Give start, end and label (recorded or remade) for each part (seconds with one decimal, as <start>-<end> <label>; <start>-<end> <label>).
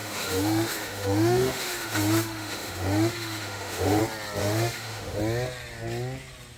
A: 0.0-4.0 remade; 4.0-4.4 recorded; 4.4-5.2 remade; 5.2-6.6 recorded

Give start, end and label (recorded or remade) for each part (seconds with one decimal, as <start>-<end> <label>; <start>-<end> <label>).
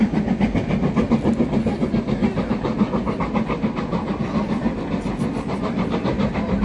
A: 0.0-6.6 recorded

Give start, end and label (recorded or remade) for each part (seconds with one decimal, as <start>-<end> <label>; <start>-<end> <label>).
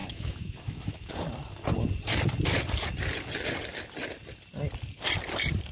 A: 0.0-1.1 remade; 1.1-5.7 recorded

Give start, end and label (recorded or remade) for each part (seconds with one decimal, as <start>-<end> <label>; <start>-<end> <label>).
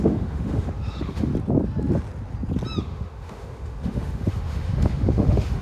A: 0.0-1.3 remade; 1.3-2.8 recorded; 2.8-5.6 remade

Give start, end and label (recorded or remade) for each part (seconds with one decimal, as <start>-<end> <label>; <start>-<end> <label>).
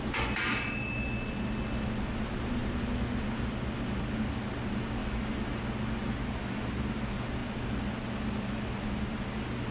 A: 0.0-5.0 recorded; 5.0-5.6 remade; 5.6-9.7 recorded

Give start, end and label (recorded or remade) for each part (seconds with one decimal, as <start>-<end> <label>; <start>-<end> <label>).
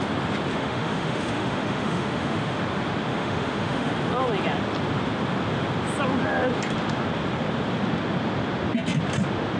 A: 0.0-0.5 recorded; 0.5-2.6 remade; 2.6-3.1 recorded; 3.1-3.9 remade; 3.9-9.6 recorded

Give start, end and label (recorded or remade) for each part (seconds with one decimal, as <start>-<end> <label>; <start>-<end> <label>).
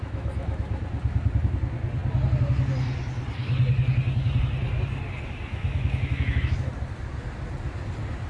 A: 0.0-0.8 remade; 0.8-5.5 recorded; 5.5-6.7 remade; 6.7-8.3 recorded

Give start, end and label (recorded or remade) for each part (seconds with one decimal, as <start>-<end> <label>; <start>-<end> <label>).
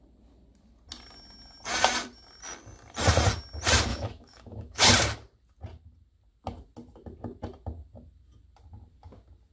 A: 0.0-3.9 recorded; 3.9-4.9 remade; 4.9-9.5 recorded